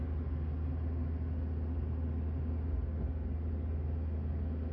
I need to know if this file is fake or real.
real